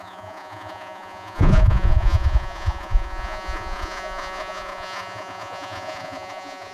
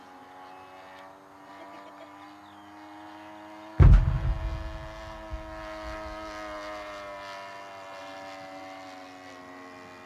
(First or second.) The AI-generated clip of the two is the first